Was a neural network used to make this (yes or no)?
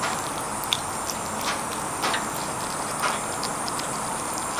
no